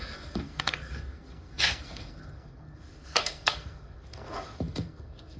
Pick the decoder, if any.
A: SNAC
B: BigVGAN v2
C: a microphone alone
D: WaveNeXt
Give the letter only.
A